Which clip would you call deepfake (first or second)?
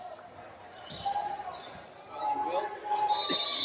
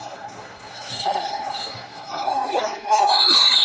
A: second